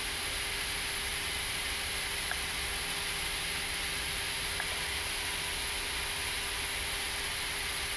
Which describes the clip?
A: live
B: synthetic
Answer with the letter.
A